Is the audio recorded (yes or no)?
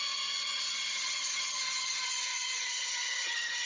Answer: no